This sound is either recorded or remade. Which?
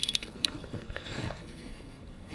remade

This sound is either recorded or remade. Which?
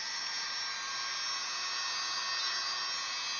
recorded